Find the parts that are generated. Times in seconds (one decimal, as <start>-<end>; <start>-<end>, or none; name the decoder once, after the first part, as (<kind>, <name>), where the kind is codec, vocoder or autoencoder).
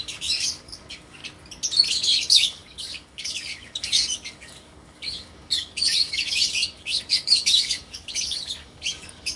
0.0-1.2 (codec, DAC); 1.9-9.4